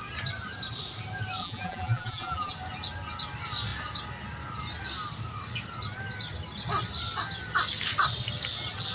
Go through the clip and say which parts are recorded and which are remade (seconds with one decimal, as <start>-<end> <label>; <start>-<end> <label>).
0.0-1.4 recorded; 1.4-2.5 remade; 2.5-8.9 recorded